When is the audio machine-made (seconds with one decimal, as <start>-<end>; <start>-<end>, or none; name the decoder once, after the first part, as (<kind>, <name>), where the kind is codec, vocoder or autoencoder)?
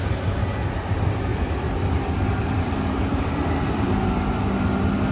1.3-4.4 (vocoder, BigVGAN v2)